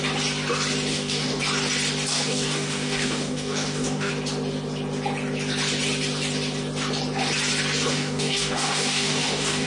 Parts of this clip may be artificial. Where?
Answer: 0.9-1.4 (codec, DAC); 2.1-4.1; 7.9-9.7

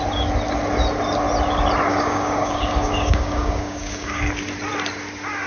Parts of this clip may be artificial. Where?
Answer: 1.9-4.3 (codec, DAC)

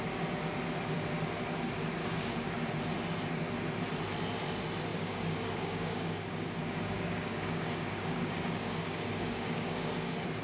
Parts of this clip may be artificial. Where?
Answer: 2.0-2.7 (codec, DAC); 4.9-9.9

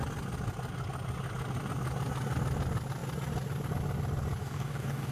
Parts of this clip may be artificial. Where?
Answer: 4.4-5.1 (codec, DAC)